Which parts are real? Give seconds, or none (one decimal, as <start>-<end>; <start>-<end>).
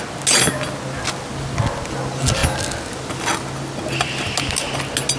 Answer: 0.0-5.2